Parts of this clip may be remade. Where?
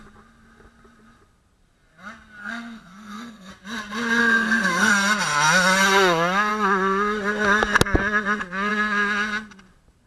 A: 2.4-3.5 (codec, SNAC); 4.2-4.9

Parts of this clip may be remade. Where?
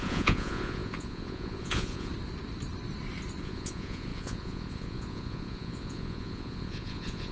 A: 0.0-2.1 (vocoder, Vocos); 3.4-7.3